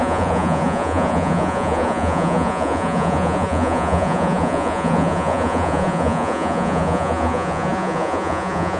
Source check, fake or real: fake